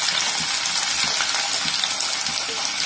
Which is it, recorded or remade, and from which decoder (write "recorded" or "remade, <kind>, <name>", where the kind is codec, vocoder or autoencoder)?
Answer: recorded